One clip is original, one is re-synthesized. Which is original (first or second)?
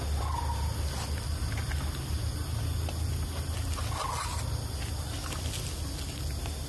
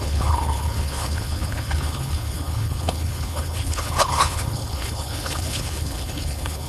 first